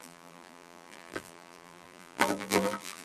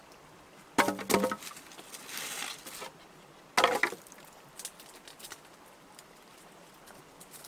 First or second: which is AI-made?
first